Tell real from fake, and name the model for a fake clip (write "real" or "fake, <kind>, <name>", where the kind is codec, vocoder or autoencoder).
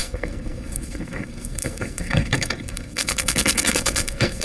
fake, codec, SNAC